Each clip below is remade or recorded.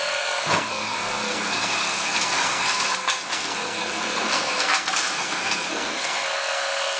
remade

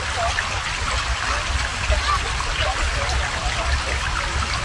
recorded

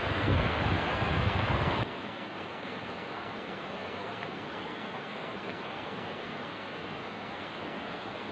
remade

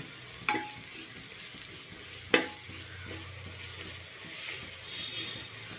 recorded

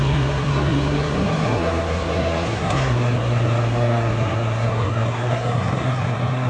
remade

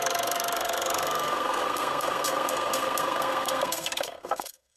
remade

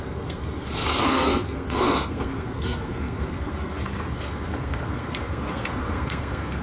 remade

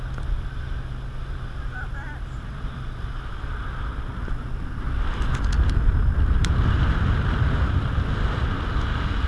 recorded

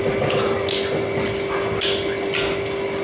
recorded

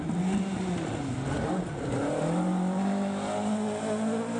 recorded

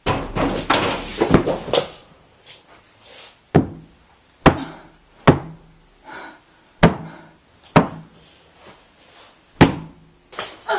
recorded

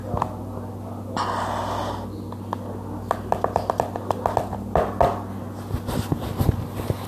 recorded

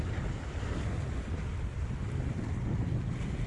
recorded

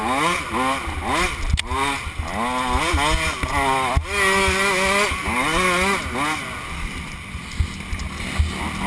recorded